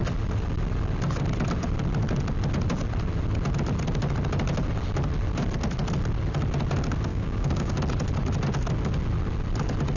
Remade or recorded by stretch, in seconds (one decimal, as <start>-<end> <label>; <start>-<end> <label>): 0.0-7.1 recorded; 7.1-7.7 remade; 7.7-10.0 recorded

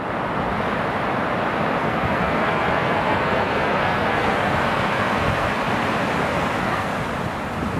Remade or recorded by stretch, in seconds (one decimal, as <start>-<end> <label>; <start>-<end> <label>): 0.0-1.8 recorded; 1.8-5.5 remade; 5.5-6.3 recorded; 6.3-6.9 remade; 6.9-7.8 recorded

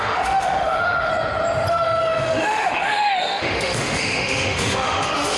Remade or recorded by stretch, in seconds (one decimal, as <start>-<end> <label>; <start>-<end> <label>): 0.0-1.1 remade; 1.1-1.7 recorded; 1.7-5.4 remade

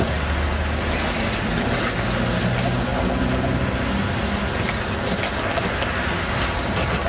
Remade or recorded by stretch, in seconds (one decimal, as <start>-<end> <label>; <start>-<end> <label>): 0.0-7.1 recorded

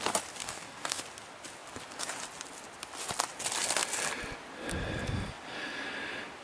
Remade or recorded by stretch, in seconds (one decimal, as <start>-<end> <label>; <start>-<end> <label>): 0.0-0.4 recorded; 0.4-1.0 remade; 1.0-6.4 recorded

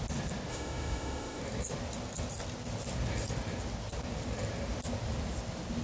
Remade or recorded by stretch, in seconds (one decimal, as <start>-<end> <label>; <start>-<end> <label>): 0.0-0.5 recorded; 0.5-1.4 remade; 1.4-5.8 recorded

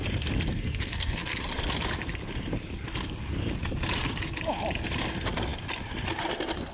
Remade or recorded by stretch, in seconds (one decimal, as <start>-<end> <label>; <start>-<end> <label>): 0.0-0.5 recorded; 0.5-1.4 remade; 1.4-6.7 recorded

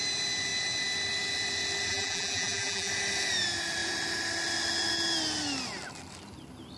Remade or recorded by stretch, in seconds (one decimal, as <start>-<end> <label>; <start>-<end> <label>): 0.0-1.9 recorded; 1.9-2.9 remade; 2.9-6.8 recorded